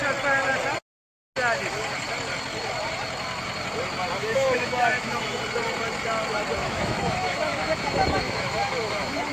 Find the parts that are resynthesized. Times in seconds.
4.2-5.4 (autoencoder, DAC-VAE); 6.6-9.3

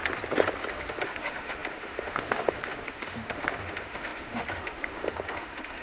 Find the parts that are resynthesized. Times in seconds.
0.7-5.8 (autoencoder, DAC-VAE)

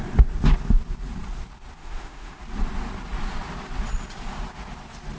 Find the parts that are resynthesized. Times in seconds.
1.8-2.4 (autoencoder, DAC-VAE)

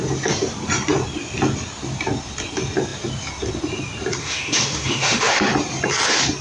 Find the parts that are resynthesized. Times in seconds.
4.2-5.5 (autoencoder, DAC-VAE)

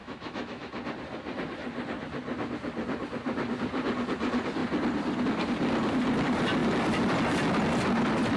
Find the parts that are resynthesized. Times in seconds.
0.0-0.7 (autoencoder, DAC-VAE)

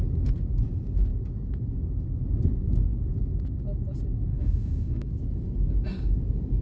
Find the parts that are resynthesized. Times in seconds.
4.3-5.1 (autoencoder, DAC-VAE)

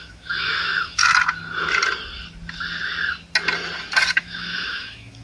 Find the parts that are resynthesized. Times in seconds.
0.0-1.0 (autoencoder, DAC-VAE); 4.1-5.2